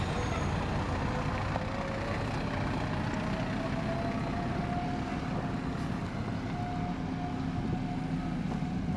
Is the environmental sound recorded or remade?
recorded